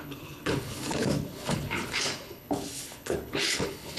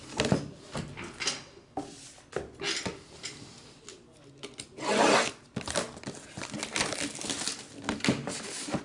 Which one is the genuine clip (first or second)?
second